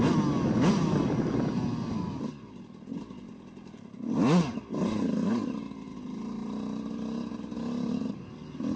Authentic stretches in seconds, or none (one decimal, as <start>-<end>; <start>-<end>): 0.0-8.8